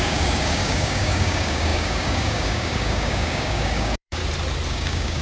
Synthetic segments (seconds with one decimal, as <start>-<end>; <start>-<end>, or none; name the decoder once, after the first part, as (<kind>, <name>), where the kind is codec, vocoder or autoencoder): 0.0-4.2 (codec, DAC); 4.7-5.2